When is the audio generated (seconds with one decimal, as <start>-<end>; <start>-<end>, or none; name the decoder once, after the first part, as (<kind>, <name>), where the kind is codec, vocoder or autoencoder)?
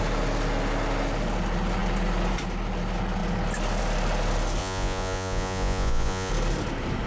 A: 4.6-6.3 (vocoder, Vocos)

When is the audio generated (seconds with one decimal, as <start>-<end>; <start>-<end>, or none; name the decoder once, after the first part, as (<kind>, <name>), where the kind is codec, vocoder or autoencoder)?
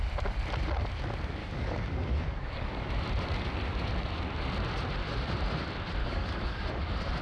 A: 1.4-2.8 (codec, DAC); 6.0-6.8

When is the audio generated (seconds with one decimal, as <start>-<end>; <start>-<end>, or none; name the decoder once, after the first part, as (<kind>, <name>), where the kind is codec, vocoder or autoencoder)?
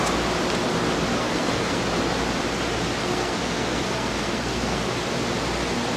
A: 1.2-1.8 (codec, SNAC); 3.0-4.9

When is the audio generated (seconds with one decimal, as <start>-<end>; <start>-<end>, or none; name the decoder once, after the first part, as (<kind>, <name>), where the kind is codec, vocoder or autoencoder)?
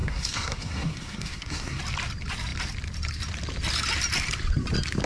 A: 0.0-1.8 (codec, SNAC)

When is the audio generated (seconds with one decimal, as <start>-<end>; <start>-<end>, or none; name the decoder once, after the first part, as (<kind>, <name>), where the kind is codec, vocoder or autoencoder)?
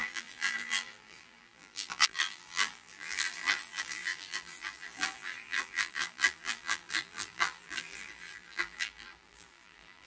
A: 0.0-10.1 (vocoder, BigVGAN v2)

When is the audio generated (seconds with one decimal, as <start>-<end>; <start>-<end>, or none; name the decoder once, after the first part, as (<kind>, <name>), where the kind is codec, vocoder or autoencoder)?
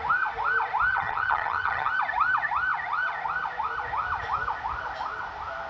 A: 0.9-1.9 (vocoder, HiFi-GAN)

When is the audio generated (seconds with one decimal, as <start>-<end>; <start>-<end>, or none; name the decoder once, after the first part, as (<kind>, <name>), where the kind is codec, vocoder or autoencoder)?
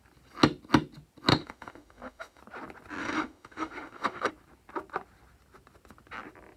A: 1.3-2.4 (autoencoder, DAC-VAE); 3.0-4.3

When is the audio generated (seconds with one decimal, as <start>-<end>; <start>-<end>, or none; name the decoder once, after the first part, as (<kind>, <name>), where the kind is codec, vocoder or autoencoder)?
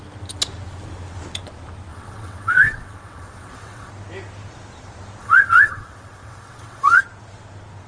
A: 1.9-3.9 (vocoder, WaveNeXt); 5.2-7.0